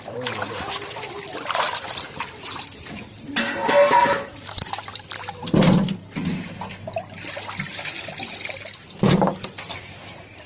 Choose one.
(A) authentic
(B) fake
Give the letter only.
B